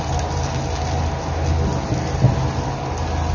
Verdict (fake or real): real